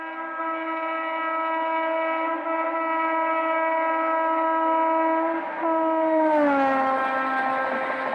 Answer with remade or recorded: recorded